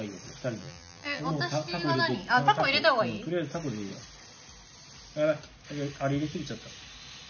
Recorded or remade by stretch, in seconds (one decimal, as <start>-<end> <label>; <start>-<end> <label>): 0.0-0.6 recorded; 0.6-1.2 remade; 1.2-7.3 recorded

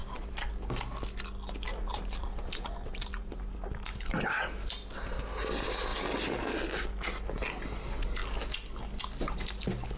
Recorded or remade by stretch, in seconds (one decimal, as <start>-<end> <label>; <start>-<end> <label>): 0.0-0.5 remade; 0.5-1.7 recorded; 1.7-4.2 remade; 4.2-10.0 recorded

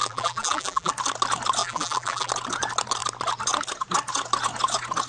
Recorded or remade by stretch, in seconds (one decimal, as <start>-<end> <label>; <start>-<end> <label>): 0.0-0.9 remade; 0.9-1.6 recorded; 1.6-2.3 remade; 2.3-5.1 recorded